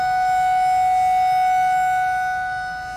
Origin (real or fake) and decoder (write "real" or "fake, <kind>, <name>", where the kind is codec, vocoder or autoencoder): real